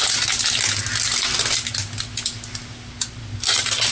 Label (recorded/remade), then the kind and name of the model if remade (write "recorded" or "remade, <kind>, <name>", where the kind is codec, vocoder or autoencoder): recorded